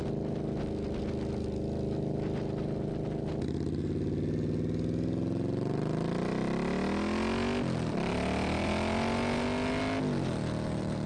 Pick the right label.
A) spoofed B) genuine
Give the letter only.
B